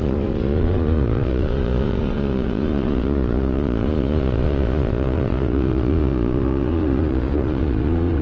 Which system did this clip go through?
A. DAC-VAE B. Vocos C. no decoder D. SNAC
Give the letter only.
B